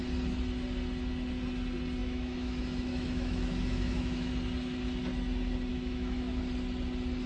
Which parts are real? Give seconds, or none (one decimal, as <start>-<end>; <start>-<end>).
0.0-2.0; 4.3-5.7; 6.4-7.3